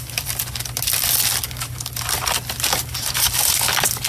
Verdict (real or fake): real